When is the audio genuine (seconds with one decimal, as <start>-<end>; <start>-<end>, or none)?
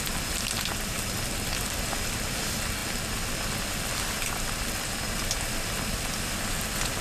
0.0-7.0